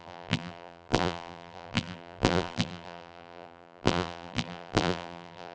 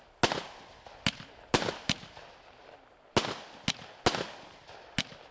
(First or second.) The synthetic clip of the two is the first